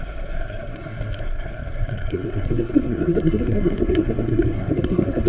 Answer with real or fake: fake